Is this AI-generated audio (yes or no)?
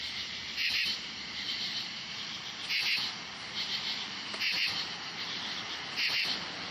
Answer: yes